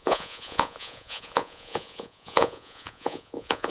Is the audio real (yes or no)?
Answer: no